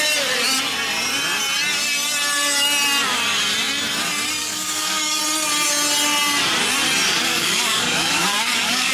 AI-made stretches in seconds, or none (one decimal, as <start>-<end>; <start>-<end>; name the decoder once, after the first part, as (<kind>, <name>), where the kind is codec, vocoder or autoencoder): 4.4-5.2 (codec, DAC); 7.2-8.9